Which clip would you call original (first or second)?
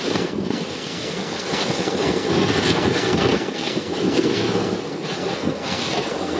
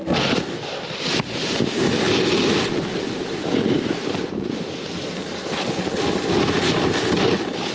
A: second